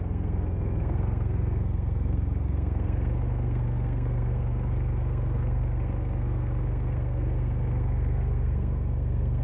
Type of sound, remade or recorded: remade